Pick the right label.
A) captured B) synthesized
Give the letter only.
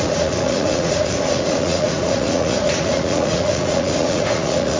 B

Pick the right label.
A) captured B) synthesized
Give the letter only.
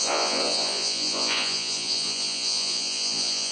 B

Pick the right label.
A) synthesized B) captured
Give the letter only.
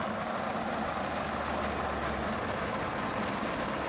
B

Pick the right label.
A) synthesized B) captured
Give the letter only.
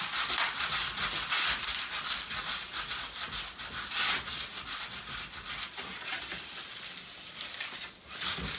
B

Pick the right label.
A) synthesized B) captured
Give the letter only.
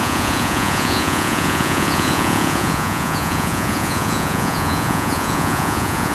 A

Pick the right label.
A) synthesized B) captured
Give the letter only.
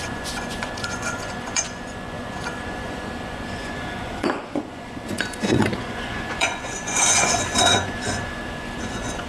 A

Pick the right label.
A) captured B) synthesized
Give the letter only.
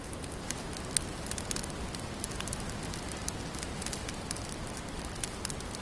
A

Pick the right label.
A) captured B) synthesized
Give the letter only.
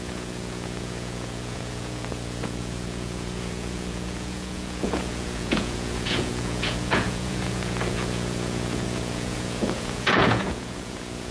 B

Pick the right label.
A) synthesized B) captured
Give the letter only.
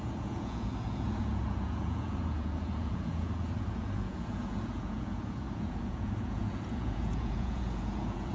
A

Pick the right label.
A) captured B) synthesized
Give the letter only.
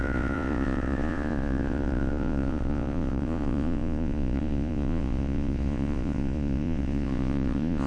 B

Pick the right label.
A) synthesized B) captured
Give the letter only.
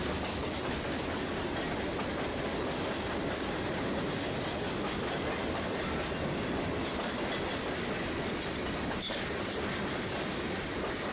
B